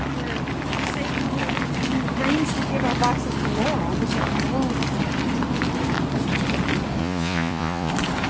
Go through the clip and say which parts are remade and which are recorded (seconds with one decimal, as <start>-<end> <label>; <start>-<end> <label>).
0.0-7.0 recorded; 7.0-7.9 remade; 7.9-8.3 recorded